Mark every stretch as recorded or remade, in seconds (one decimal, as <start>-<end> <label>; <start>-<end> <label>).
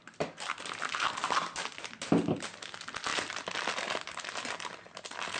0.0-5.4 recorded